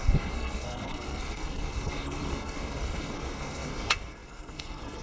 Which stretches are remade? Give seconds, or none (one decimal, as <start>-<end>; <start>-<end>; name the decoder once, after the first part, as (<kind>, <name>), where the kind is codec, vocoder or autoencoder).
0.0-5.0 (codec, SNAC)